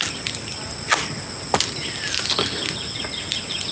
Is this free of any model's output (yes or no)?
yes